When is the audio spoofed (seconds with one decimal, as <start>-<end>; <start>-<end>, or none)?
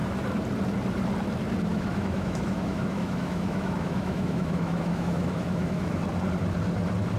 1.7-6.0